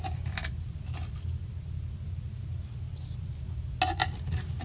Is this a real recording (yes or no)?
yes